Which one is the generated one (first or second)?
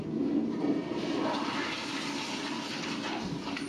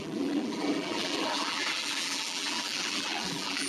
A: second